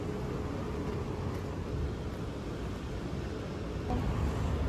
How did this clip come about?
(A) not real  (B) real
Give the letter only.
B